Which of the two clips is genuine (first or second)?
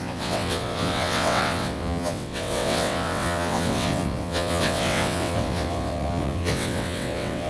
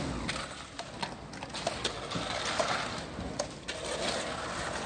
second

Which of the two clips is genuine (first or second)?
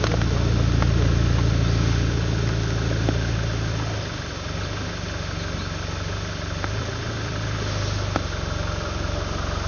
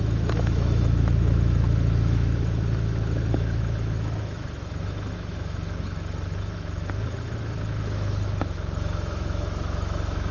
first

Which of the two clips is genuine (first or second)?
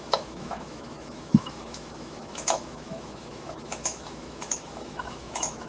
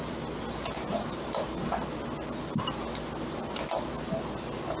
second